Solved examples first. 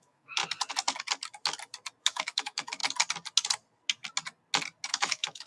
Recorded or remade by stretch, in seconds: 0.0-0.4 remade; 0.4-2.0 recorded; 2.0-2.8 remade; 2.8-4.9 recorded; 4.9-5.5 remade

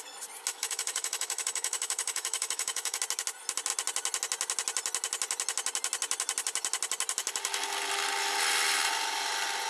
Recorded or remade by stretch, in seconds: 0.0-0.5 recorded; 0.5-3.0 remade; 3.0-9.7 recorded

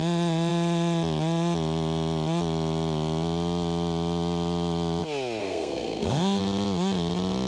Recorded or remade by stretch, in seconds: 0.0-5.4 recorded; 5.4-6.4 remade; 6.4-7.5 recorded

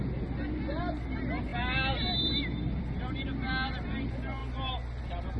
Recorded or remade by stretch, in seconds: 0.0-5.4 recorded